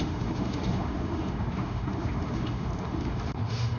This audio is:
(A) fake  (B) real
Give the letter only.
A